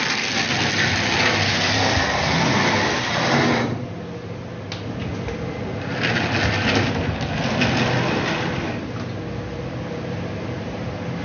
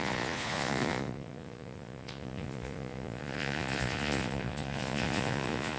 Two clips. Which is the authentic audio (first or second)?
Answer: first